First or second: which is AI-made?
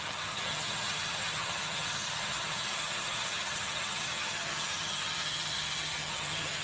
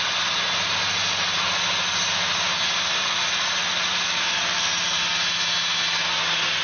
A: first